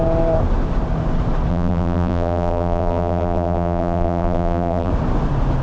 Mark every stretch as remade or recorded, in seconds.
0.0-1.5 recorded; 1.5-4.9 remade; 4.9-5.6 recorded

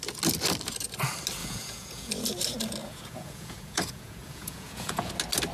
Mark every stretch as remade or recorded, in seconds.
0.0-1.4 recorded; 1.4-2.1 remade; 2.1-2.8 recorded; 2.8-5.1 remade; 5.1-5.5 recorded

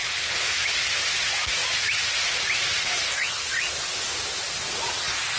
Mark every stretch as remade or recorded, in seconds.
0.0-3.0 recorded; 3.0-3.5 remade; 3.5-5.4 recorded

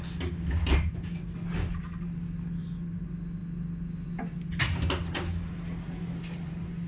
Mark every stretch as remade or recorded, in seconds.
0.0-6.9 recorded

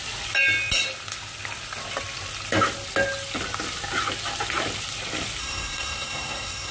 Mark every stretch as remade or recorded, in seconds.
0.0-5.4 recorded; 5.4-6.7 remade

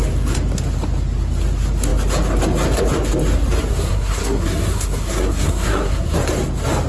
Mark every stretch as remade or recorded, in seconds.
0.0-3.7 recorded; 3.7-6.2 remade; 6.2-6.9 recorded